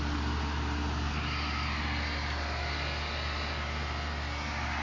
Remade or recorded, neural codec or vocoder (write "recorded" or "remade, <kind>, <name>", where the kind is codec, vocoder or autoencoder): recorded